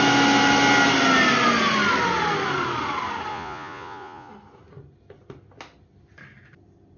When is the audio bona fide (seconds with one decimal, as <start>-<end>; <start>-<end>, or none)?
0.0-3.3; 4.3-7.0